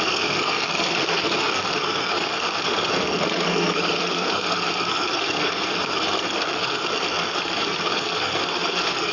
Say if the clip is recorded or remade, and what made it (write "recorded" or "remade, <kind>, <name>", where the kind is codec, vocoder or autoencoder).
remade, codec, SNAC